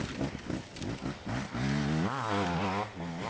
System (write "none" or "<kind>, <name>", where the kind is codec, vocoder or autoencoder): none